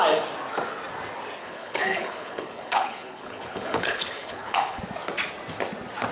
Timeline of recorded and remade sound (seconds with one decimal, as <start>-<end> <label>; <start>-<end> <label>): 0.0-1.4 recorded; 1.4-4.8 remade; 4.8-6.1 recorded